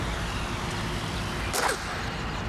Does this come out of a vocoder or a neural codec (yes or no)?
no